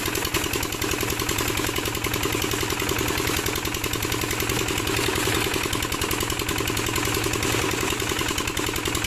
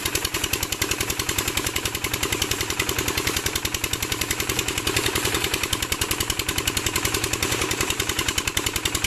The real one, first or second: first